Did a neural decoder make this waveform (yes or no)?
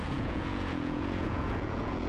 yes